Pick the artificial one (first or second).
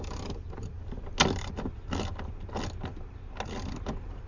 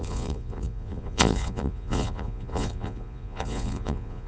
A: second